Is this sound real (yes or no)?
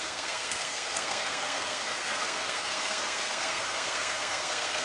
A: no